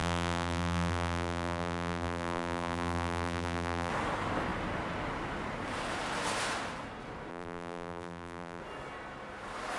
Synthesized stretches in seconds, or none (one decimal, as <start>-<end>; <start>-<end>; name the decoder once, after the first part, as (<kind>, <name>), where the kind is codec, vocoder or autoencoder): 0.0-3.9 (vocoder, BigVGAN v2); 7.3-8.6